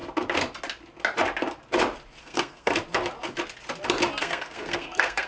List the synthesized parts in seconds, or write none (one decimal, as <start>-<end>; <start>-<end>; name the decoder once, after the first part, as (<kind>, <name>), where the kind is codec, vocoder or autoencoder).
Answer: 2.2-2.7 (codec, SNAC); 4.2-5.3